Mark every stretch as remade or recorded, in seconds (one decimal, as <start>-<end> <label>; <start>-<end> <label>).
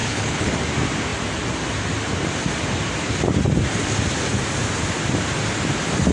0.0-0.5 remade; 0.5-6.1 recorded